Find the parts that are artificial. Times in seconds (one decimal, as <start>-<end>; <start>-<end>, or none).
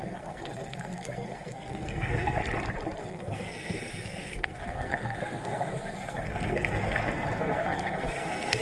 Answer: 0.0-2.4; 3.0-8.6